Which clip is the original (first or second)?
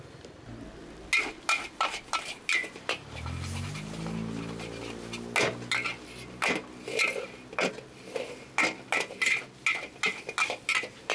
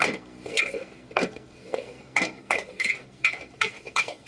first